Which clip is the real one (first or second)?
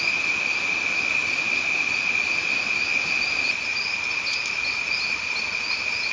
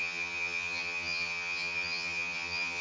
first